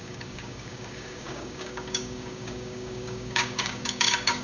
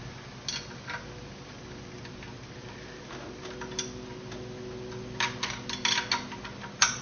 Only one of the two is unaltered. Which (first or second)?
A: second